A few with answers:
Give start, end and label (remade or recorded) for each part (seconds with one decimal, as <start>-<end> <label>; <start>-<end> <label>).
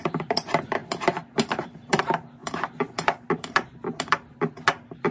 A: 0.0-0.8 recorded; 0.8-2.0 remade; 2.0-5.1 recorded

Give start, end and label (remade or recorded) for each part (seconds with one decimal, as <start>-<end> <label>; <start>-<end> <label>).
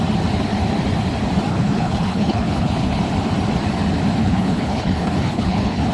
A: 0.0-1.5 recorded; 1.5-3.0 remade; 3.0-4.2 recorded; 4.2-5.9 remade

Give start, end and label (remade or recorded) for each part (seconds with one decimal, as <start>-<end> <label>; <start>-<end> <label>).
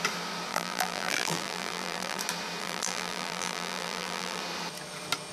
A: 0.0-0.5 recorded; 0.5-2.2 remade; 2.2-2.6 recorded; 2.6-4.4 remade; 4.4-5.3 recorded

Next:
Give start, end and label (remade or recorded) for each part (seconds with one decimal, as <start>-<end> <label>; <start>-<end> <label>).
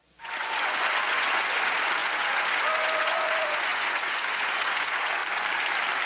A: 0.0-5.2 remade; 5.2-6.1 recorded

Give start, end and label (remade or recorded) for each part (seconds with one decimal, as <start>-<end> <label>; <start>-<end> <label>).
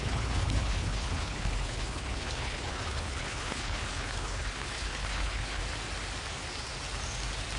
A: 0.0-5.6 remade; 5.6-7.6 recorded